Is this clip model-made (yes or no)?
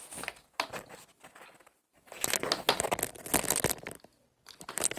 no